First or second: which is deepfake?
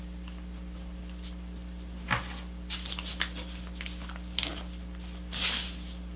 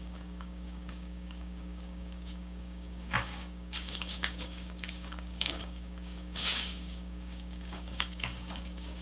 second